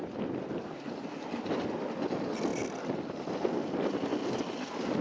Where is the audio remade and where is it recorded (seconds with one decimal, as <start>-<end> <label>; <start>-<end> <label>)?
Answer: 0.0-5.0 recorded